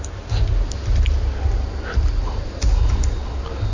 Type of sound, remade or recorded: recorded